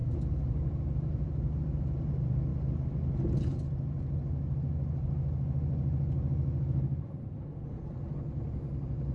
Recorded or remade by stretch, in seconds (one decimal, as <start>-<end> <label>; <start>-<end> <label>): 0.0-9.1 recorded